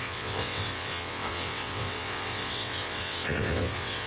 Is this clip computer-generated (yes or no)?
yes